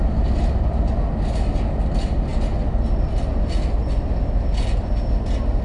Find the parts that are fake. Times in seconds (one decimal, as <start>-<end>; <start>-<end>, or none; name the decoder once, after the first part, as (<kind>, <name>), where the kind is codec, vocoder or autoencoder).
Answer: none